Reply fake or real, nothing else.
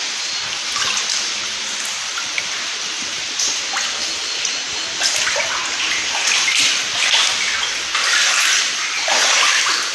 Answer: real